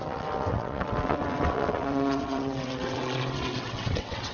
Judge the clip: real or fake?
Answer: fake